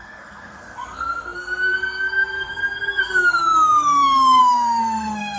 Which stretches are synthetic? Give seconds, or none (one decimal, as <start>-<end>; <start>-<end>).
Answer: 0.0-5.4